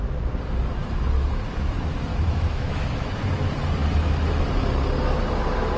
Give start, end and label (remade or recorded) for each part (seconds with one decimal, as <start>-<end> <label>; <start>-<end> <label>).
0.0-2.1 recorded; 2.1-2.9 remade; 2.9-5.8 recorded